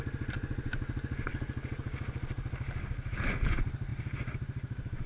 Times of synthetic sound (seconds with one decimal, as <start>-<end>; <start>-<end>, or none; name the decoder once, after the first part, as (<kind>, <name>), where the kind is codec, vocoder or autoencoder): 3.9-5.1 (vocoder, BigVGAN v2)